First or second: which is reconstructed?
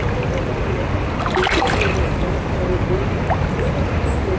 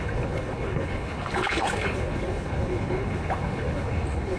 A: second